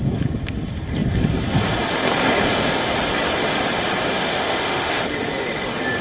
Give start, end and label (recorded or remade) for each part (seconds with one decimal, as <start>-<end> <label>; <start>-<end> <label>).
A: 0.0-4.1 recorded; 4.1-5.0 remade; 5.0-6.0 recorded